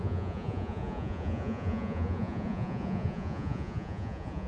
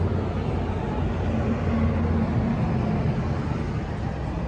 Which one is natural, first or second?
second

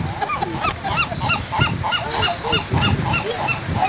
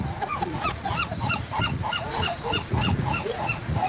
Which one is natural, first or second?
first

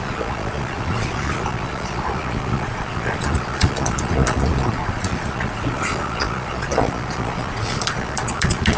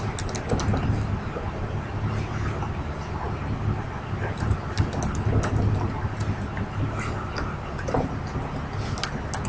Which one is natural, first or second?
second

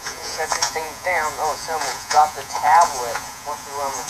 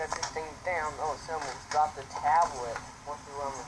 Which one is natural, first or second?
second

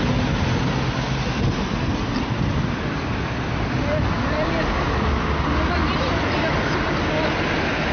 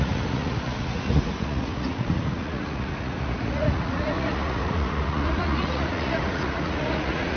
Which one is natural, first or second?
first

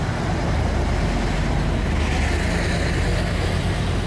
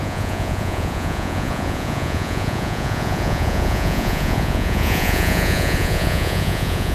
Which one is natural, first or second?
first